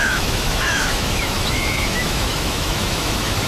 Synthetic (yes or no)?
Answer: yes